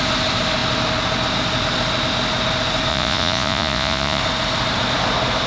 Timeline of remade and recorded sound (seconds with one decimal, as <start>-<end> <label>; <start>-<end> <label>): 0.0-2.9 recorded; 2.9-4.2 remade; 4.2-5.5 recorded